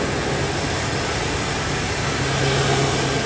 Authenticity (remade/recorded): recorded